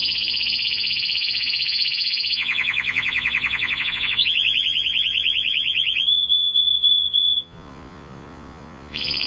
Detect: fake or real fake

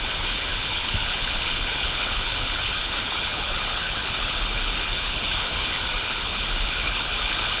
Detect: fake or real fake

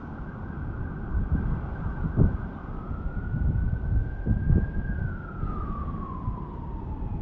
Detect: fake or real fake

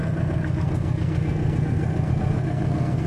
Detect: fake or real fake